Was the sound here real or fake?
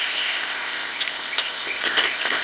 fake